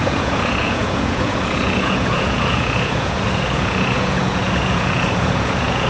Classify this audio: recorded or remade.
remade